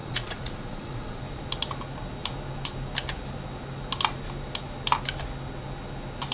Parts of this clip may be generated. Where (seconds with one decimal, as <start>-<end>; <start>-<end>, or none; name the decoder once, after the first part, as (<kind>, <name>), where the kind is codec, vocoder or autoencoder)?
0.0-1.2 (vocoder, Vocos)

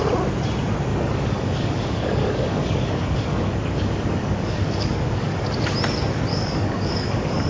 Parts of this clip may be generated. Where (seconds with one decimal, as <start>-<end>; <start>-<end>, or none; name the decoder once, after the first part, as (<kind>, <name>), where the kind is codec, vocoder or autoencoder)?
0.9-5.4 (codec, DAC); 6.3-7.5

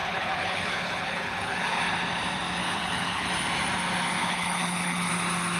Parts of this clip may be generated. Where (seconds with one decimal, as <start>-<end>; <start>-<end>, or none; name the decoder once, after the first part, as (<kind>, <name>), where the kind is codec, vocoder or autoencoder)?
0.0-1.8 (codec, HILCodec); 2.6-3.3; 4.2-5.1

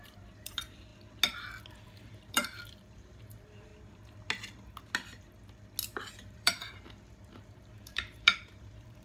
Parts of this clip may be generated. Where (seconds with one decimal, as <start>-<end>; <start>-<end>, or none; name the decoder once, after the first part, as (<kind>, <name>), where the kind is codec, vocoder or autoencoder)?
0.0-0.9 (vocoder, BigVGAN v2); 1.7-3.7; 6.1-9.0

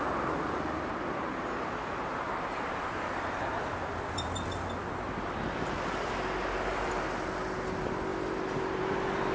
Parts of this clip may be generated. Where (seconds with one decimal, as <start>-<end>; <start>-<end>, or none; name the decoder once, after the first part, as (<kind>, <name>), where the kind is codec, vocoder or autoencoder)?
2.1-6.9 (vocoder, BigVGAN v2); 8.1-9.3